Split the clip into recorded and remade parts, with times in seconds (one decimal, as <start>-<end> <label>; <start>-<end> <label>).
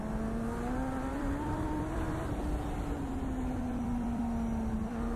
0.0-1.1 recorded; 1.1-4.2 remade; 4.2-5.2 recorded